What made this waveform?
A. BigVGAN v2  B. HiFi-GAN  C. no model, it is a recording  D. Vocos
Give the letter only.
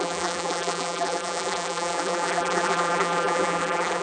A